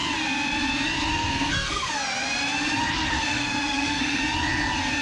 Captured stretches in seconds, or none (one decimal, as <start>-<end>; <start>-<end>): 0.0-1.1; 1.9-3.1; 4.2-5.0